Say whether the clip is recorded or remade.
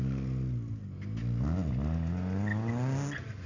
recorded